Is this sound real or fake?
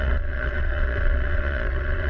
fake